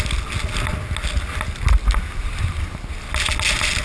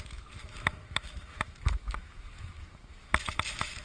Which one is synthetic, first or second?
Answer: second